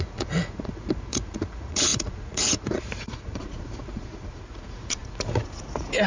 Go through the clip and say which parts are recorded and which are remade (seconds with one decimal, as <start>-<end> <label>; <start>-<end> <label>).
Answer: 0.0-6.1 remade

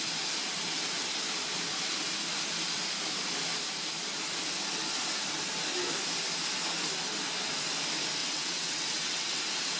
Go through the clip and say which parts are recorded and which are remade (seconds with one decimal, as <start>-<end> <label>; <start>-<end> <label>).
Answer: 0.0-8.2 recorded; 8.2-9.4 remade; 9.4-9.8 recorded

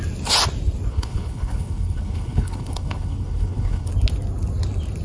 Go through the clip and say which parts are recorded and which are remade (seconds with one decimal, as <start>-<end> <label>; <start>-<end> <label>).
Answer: 0.0-0.9 recorded; 0.9-3.9 remade; 3.9-5.0 recorded

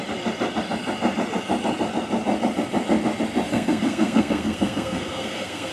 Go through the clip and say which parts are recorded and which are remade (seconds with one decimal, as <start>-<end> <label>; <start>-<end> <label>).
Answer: 0.0-3.5 recorded; 3.5-5.7 remade

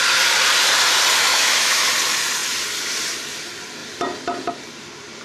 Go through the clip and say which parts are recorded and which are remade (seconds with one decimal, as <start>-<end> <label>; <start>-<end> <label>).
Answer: 0.0-1.3 recorded; 1.3-1.9 remade; 1.9-5.2 recorded